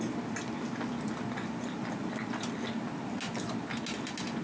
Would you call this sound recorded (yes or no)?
yes